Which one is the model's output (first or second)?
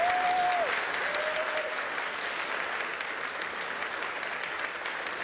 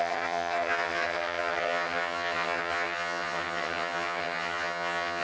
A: second